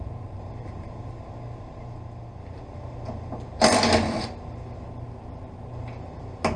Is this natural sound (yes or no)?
yes